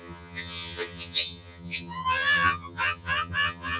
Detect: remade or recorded remade